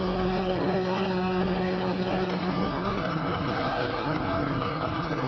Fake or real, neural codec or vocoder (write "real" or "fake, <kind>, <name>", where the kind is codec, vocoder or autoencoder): fake, codec, SNAC